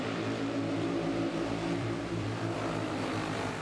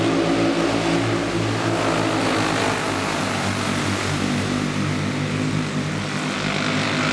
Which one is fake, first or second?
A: first